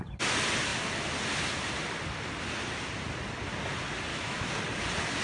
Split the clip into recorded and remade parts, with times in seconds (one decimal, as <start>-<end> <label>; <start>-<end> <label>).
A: 0.0-4.1 recorded; 4.1-4.6 remade; 4.6-5.2 recorded